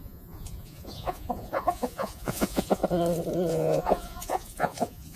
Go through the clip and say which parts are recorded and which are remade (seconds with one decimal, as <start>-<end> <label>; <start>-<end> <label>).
0.0-2.8 remade; 2.8-3.5 recorded; 3.5-5.2 remade